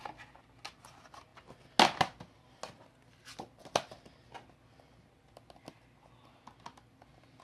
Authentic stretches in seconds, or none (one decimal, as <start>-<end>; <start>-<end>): 0.0-7.4